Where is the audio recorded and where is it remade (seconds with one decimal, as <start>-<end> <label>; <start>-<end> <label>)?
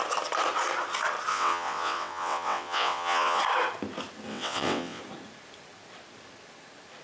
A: 0.0-1.3 recorded; 1.3-3.4 remade; 3.4-4.3 recorded; 4.3-5.0 remade; 5.0-7.0 recorded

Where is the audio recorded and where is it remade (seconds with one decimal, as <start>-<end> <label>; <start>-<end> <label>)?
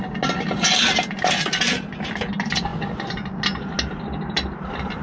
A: 0.0-5.0 recorded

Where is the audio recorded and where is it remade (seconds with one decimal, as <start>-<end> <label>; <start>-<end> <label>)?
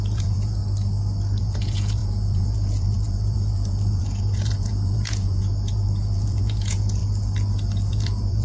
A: 0.0-0.6 remade; 0.6-1.4 recorded; 1.4-7.0 remade; 7.0-7.9 recorded; 7.9-8.4 remade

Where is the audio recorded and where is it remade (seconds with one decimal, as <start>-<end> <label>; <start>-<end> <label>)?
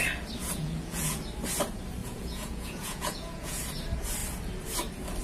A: 0.0-0.4 recorded; 0.4-1.2 remade; 1.2-2.0 recorded; 2.0-3.6 remade; 3.6-5.2 recorded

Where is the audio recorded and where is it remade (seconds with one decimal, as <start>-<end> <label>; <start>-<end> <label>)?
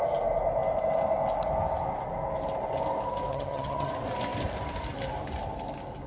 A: 0.0-3.3 recorded; 3.3-3.9 remade; 3.9-6.1 recorded